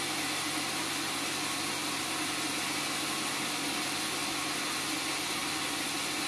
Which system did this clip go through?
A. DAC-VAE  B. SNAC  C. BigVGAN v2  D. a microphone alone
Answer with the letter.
D